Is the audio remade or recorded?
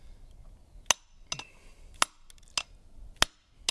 recorded